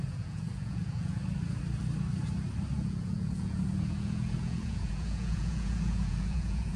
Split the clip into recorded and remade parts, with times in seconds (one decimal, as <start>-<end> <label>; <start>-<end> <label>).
0.0-1.2 remade; 1.2-2.7 recorded; 2.7-6.8 remade